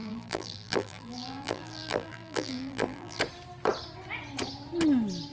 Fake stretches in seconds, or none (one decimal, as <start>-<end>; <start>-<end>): 0.0-3.2